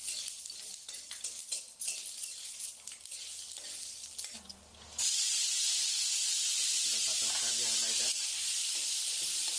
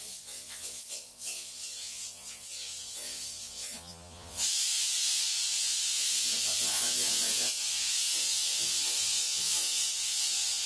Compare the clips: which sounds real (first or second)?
first